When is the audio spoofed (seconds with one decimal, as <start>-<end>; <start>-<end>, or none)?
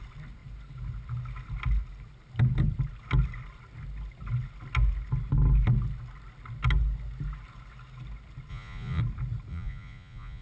8.5-9.0; 9.5-10.4